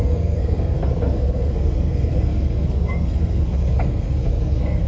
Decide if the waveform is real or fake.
fake